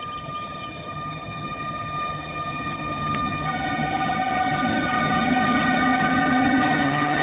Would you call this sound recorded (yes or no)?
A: no